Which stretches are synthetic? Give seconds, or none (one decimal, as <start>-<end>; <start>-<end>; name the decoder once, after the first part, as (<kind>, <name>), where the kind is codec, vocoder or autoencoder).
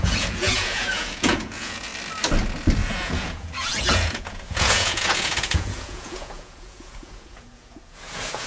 0.0-1.9 (vocoder, Vocos); 2.9-8.5